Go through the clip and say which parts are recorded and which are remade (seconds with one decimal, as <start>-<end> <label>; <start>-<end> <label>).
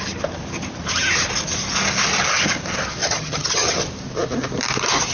0.0-3.0 recorded; 3.0-3.7 remade; 3.7-5.1 recorded